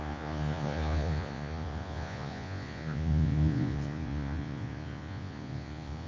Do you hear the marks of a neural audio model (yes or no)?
yes